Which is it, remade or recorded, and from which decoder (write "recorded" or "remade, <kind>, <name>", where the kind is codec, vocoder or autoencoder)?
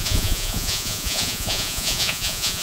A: remade, vocoder, Vocos